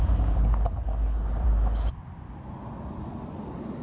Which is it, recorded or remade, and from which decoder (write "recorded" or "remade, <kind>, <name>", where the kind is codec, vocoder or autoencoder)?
recorded